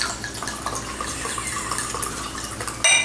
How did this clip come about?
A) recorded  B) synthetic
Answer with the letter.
A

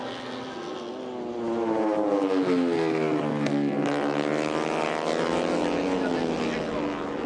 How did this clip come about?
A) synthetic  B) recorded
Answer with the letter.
B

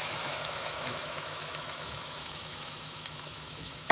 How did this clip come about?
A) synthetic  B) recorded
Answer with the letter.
A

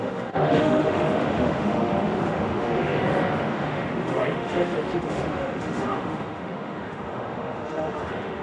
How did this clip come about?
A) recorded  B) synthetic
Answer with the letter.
B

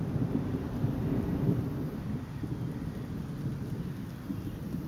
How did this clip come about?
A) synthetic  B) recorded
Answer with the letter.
B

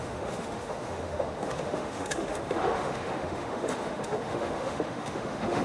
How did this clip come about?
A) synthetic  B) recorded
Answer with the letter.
A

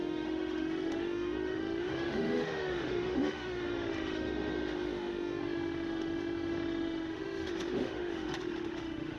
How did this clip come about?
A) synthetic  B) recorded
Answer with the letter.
A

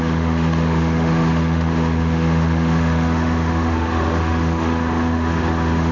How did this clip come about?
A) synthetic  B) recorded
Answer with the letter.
A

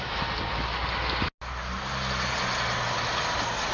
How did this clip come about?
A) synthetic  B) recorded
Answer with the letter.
B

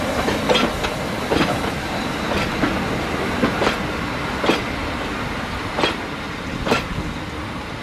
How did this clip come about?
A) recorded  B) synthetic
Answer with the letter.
A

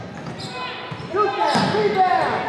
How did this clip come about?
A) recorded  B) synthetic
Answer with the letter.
A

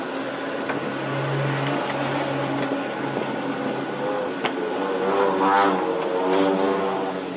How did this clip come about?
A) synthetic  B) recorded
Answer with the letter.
B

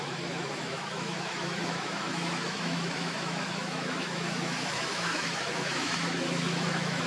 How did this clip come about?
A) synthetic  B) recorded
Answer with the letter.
A